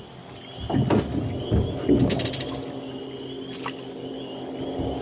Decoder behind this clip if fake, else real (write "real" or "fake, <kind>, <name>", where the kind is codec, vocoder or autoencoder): real